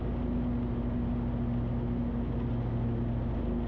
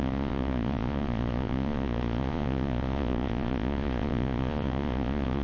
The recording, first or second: first